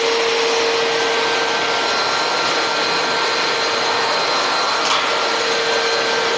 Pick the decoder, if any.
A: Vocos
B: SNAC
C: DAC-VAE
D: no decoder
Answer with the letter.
D